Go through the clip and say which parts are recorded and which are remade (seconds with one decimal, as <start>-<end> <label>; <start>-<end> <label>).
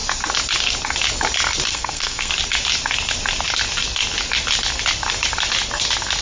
0.0-1.7 recorded; 1.7-2.3 remade; 2.3-6.2 recorded